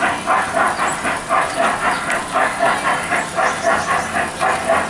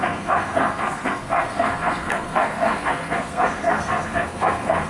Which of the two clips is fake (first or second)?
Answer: second